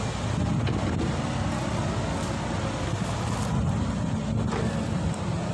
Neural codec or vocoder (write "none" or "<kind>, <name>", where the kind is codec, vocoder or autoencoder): none